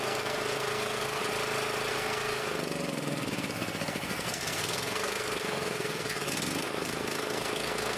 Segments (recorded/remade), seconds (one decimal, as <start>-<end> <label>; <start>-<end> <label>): 0.0-1.2 remade; 1.2-1.9 recorded; 1.9-8.0 remade